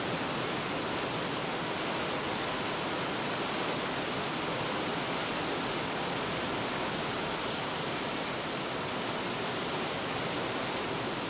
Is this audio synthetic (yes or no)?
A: no